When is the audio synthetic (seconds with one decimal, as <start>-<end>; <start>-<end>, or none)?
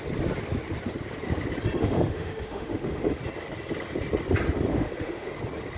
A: 1.8-3.2; 4.7-5.3